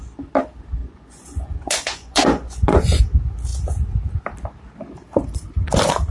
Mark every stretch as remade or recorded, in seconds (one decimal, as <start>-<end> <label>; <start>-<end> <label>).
0.0-0.8 recorded; 0.8-3.0 remade; 3.0-6.1 recorded